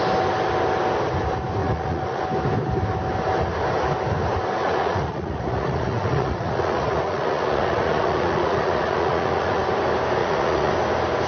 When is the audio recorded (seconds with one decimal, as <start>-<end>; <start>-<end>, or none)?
0.0-1.6; 2.2-4.6; 9.6-10.2; 10.7-11.3